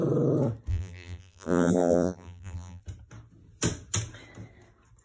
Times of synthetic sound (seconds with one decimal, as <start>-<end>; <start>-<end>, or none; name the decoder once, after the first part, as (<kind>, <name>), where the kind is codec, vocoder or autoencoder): 0.7-2.8 (vocoder, BigVGAN v2)